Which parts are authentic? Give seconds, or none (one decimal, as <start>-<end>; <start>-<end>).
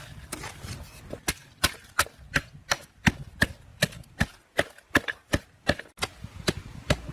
0.0-3.7; 5.4-7.1